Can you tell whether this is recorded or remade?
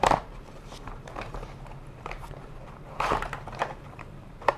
remade